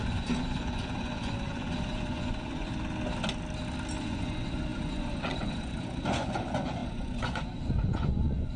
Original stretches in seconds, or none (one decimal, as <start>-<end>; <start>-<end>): 2.7-4.0